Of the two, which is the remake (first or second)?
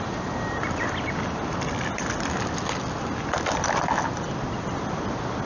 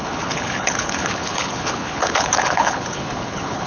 second